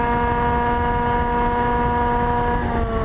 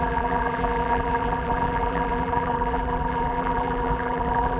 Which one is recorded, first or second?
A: first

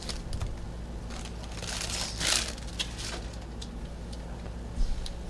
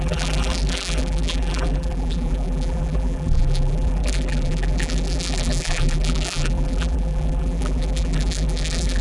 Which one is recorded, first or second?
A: first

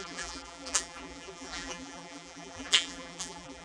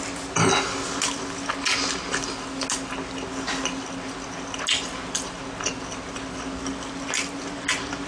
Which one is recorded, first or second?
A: second